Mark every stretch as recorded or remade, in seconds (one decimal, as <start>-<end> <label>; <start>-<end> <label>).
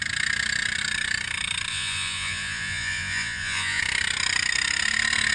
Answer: 0.0-1.7 recorded; 1.7-3.8 remade; 3.8-5.3 recorded